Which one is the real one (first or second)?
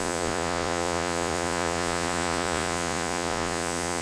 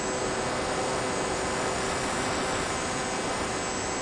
second